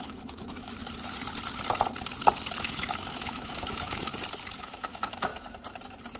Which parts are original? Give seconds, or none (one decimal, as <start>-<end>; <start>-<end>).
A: 0.8-2.6; 4.1-4.6; 5.3-6.2